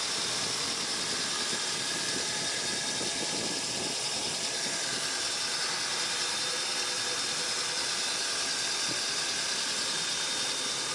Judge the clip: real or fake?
real